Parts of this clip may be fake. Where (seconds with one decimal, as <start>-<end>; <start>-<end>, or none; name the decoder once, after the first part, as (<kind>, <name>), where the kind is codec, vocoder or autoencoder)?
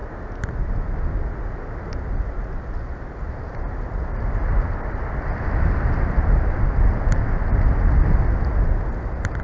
none